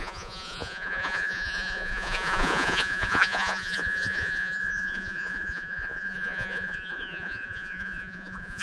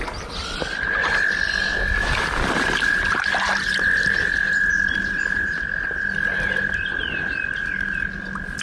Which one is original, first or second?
second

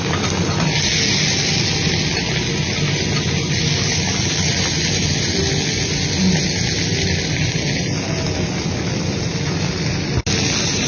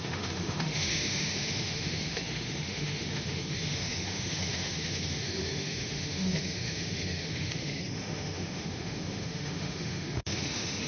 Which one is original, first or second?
first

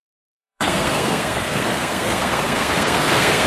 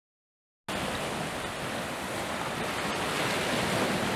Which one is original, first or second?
second